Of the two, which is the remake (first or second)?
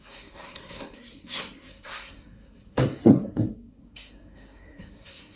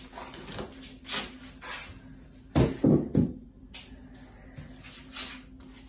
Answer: first